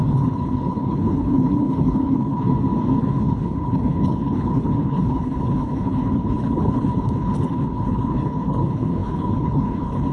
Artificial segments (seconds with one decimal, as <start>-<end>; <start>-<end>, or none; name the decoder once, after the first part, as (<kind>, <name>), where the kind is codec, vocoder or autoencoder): 0.0-2.5 (codec, HILCodec); 3.0-10.1